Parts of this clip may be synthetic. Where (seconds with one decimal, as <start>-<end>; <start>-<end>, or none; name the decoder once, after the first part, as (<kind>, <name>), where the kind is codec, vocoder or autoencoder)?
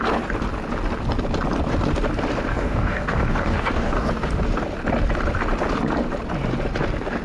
2.5-4.1 (codec, DAC)